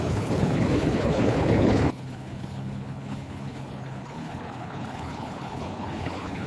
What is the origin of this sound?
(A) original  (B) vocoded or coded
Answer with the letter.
B